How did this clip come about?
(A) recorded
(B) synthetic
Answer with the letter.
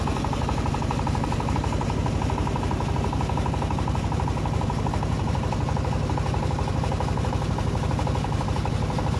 A